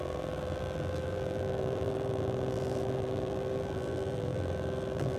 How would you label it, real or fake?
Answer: fake